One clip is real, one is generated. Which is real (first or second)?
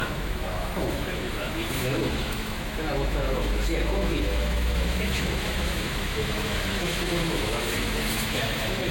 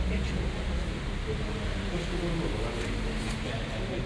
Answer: second